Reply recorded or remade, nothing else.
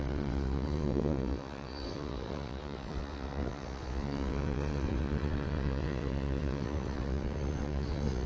remade